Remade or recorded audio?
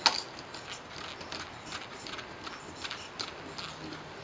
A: recorded